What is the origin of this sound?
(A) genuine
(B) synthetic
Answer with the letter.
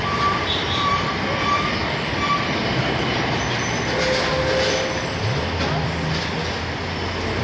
A